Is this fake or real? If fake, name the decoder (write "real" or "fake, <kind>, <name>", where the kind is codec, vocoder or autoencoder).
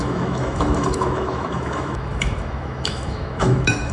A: fake, autoencoder, DAC-VAE